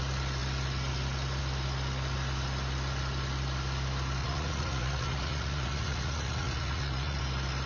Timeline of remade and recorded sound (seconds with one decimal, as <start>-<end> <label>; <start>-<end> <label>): 0.0-4.2 recorded; 4.2-7.2 remade; 7.2-7.7 recorded